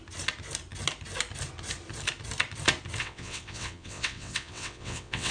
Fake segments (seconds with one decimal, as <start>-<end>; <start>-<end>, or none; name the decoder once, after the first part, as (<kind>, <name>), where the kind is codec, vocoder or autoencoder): 3.0-5.3 (vocoder, WaveNeXt)